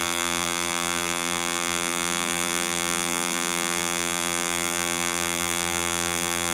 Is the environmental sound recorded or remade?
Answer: remade